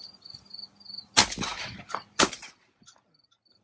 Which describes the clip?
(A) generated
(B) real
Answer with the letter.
B